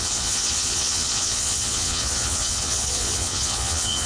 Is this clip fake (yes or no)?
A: yes